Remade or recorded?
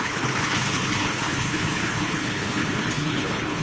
remade